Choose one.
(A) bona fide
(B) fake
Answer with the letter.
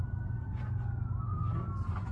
A